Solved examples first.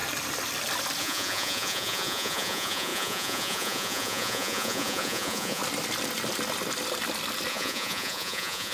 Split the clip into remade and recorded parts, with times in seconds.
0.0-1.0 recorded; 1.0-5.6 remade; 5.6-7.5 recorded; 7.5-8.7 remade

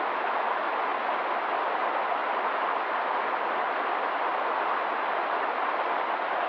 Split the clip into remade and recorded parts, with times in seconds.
0.0-6.5 recorded

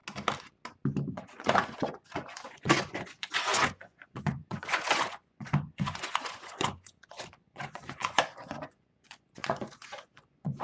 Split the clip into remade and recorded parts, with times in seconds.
0.0-1.1 recorded; 1.1-10.6 remade

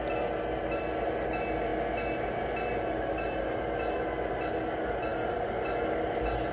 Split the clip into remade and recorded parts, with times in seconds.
0.0-6.5 recorded

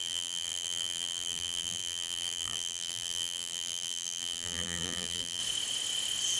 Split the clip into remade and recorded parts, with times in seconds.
0.0-5.4 remade; 5.4-6.4 recorded

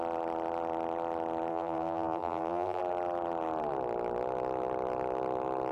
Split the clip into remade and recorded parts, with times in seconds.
0.0-1.5 recorded; 1.5-2.8 remade; 2.8-5.7 recorded